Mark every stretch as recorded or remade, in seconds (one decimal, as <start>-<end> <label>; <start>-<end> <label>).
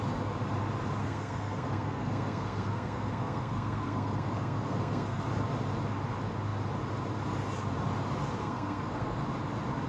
0.0-1.0 recorded; 1.0-5.2 remade; 5.2-8.4 recorded; 8.4-9.2 remade; 9.2-9.9 recorded